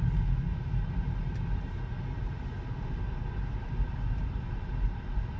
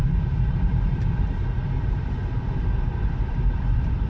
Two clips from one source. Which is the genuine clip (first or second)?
first